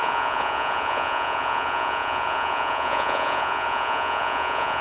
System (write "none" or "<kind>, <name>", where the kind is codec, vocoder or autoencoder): vocoder, Vocos